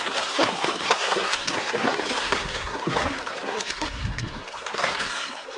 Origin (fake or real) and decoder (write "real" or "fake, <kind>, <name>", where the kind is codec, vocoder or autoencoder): fake, codec, SNAC